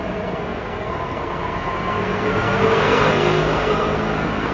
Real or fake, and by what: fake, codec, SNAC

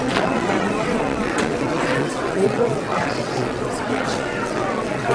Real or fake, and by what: fake, vocoder, WaveNeXt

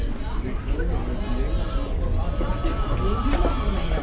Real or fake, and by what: real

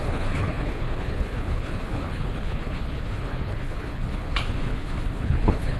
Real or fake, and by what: fake, codec, HILCodec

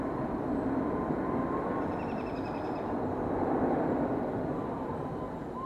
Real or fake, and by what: fake, vocoder, BigVGAN v2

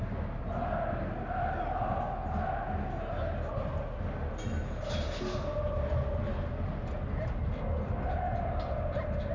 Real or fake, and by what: real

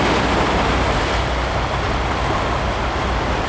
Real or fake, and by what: real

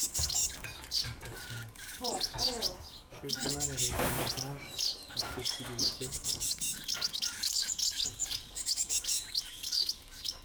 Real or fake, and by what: fake, codec, DAC